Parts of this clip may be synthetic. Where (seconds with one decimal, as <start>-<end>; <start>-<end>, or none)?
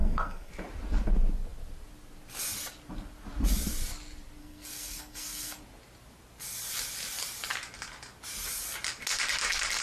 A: 0.0-0.5; 4.4-5.6